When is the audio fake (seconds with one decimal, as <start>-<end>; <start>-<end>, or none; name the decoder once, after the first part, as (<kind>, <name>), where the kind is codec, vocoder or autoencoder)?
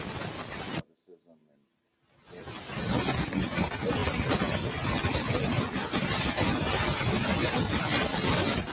none